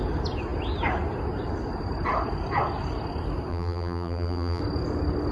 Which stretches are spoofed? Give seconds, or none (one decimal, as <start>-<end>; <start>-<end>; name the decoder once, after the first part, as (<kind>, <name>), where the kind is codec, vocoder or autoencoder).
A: 3.5-4.6 (vocoder, BigVGAN v2)